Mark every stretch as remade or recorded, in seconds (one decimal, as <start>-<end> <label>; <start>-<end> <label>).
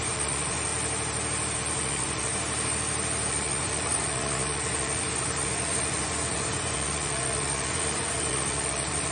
0.0-0.7 remade; 0.7-1.6 recorded; 1.6-2.3 remade; 2.3-3.3 recorded; 3.3-9.1 remade